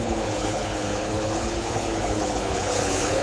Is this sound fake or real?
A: fake